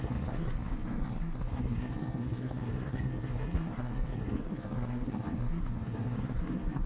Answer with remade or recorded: remade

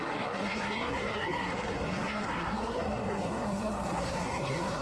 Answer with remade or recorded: remade